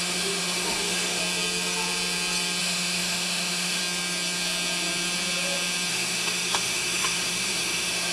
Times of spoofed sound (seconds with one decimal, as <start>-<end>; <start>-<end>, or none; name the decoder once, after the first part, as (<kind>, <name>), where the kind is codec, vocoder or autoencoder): 0.0-1.2 (autoencoder, DAC-VAE); 2.6-3.8; 5.9-8.1